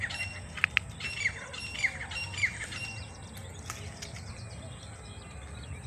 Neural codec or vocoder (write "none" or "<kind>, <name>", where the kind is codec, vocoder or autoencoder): none